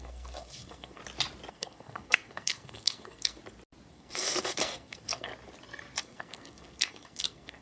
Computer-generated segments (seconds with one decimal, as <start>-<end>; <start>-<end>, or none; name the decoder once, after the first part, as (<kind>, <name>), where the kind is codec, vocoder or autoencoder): 0.0-1.0 (codec, SNAC); 1.5-3.4; 3.9-5.3; 6.0-7.6